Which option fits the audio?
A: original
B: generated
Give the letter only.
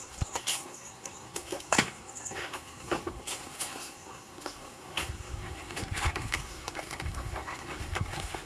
B